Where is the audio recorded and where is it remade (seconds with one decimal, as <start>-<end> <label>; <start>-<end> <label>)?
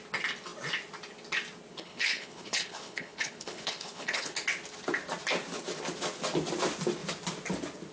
0.0-1.7 recorded; 1.7-4.3 remade; 4.3-7.9 recorded